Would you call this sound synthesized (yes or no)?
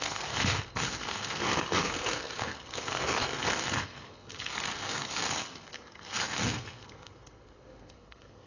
yes